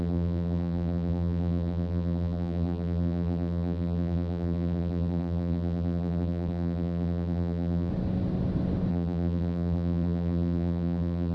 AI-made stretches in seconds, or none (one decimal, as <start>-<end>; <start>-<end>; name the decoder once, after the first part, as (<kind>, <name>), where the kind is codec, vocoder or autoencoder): 0.0-7.9 (vocoder, BigVGAN v2); 8.9-11.3